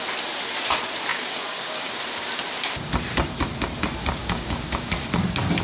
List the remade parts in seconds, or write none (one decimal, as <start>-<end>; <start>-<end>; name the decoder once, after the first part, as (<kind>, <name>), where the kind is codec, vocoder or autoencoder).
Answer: 1.1-1.9 (codec, DAC); 4.2-4.9